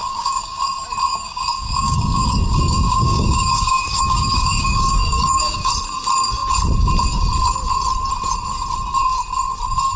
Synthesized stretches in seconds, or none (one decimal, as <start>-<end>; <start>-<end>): 0.0-0.6; 1.1-5.7